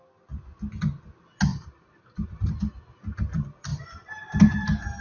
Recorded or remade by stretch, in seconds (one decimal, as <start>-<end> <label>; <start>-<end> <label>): 0.0-1.5 recorded; 1.5-2.5 remade; 2.5-3.7 recorded; 3.7-4.4 remade; 4.4-5.0 recorded